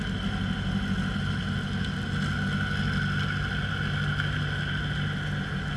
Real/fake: real